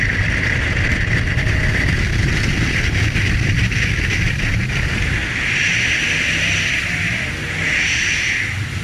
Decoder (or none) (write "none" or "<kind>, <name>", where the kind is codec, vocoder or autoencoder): none